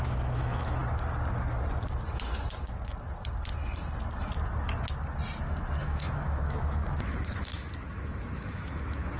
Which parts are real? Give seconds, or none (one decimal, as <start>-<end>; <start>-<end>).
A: 0.8-5.8